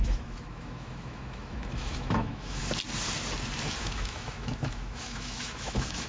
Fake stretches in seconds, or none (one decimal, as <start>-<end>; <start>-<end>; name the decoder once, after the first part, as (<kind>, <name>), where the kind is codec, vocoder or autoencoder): 0.0-2.6 (autoencoder, DAC-VAE); 3.8-6.1